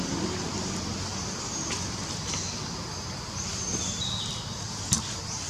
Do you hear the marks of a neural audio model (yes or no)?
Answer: no